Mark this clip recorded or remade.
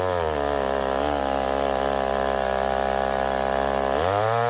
recorded